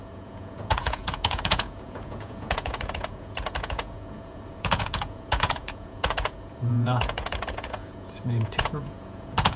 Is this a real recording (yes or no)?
no